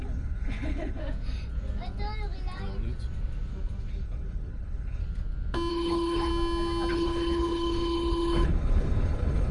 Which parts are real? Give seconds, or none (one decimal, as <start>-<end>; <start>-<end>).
1.0-3.9; 5.0-5.7; 6.3-6.9